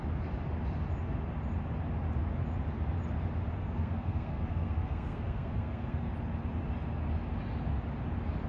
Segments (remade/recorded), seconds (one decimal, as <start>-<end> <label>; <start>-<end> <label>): 0.0-3.6 recorded; 3.6-6.1 remade; 6.1-8.5 recorded